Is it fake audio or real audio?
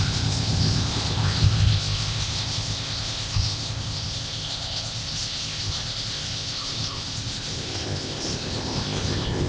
fake